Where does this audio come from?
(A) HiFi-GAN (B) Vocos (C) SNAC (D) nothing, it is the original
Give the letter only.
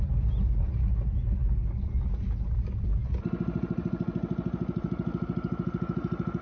D